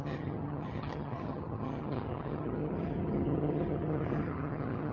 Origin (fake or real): fake